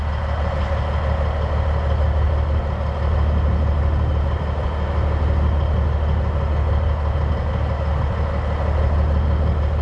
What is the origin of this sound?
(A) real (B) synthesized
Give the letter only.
A